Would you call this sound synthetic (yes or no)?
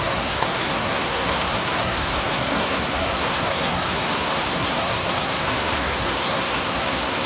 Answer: yes